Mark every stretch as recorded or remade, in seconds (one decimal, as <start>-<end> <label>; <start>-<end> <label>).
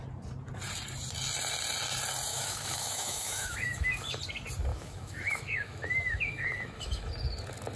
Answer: 0.0-2.3 recorded; 2.3-4.2 remade; 4.2-4.7 recorded; 4.7-7.1 remade; 7.1-7.8 recorded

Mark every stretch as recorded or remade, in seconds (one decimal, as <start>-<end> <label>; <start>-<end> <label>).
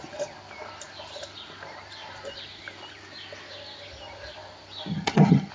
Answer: 0.0-4.9 recorded; 4.9-5.5 remade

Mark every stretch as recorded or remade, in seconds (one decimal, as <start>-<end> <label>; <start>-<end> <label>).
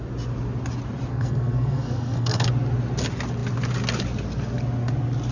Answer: 0.0-1.1 recorded; 1.1-2.5 remade; 2.5-5.3 recorded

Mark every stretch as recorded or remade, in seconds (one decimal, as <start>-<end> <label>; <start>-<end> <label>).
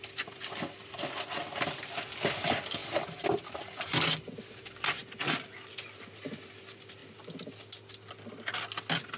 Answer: 0.0-1.3 remade; 1.3-2.8 recorded; 2.8-4.3 remade; 4.3-9.2 recorded